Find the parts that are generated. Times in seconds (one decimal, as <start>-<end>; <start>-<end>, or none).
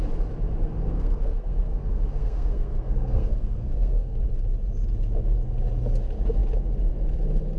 0.8-4.2